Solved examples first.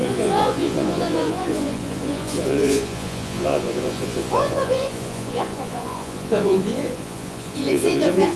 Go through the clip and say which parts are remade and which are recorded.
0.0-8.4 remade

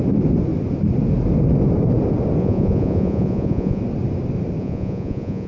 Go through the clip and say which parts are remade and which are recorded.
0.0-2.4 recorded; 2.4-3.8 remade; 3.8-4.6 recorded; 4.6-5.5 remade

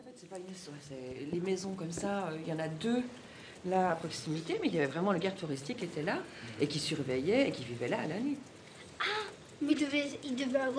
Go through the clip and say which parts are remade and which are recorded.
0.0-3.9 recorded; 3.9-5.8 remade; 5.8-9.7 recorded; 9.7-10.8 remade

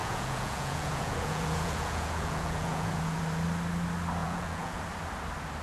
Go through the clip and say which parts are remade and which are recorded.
0.0-3.2 remade; 3.2-4.2 recorded; 4.2-4.8 remade; 4.8-5.6 recorded

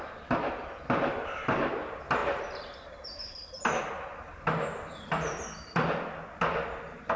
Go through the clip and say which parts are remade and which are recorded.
0.0-7.2 recorded

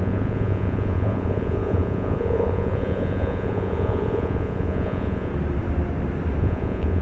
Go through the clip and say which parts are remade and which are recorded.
0.0-5.3 remade; 5.3-6.4 recorded; 6.4-7.0 remade

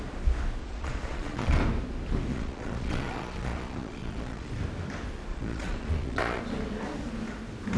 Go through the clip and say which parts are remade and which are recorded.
0.0-0.6 recorded; 0.6-1.6 remade; 1.6-2.3 recorded; 2.3-4.5 remade; 4.5-5.3 recorded; 5.3-6.4 remade; 6.4-7.8 recorded